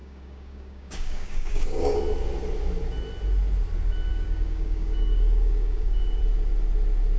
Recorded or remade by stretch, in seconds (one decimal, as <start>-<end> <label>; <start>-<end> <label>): 0.0-2.0 remade; 2.0-4.1 recorded; 4.1-6.2 remade; 6.2-7.2 recorded